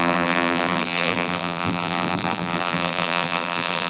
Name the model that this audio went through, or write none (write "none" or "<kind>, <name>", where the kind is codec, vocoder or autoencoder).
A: vocoder, BigVGAN v2